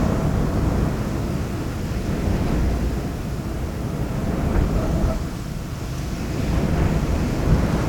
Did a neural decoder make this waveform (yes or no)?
no